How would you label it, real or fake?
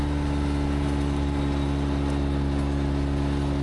real